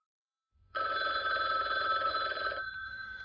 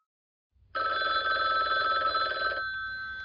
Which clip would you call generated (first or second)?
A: first